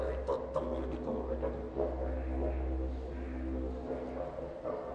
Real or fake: real